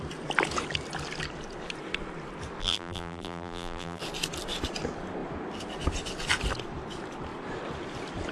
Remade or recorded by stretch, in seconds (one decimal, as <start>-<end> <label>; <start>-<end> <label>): 0.0-2.6 recorded; 2.6-4.0 remade; 4.0-8.3 recorded

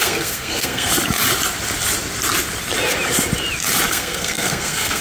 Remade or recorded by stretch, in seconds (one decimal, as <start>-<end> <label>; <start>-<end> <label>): 0.0-0.9 remade; 0.9-3.9 recorded; 3.9-5.0 remade

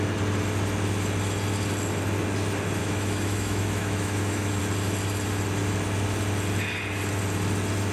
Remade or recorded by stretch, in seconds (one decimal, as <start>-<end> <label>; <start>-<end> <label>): 0.0-2.8 recorded; 2.8-4.6 remade; 4.6-7.9 recorded

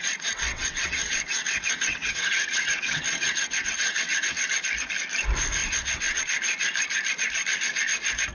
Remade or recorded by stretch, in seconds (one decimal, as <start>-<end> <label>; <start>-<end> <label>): 0.0-4.5 remade; 4.5-5.6 recorded; 5.6-6.2 remade; 6.2-8.3 recorded

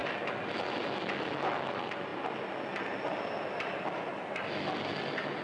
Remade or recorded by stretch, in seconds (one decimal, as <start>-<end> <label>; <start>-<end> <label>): 0.0-5.4 recorded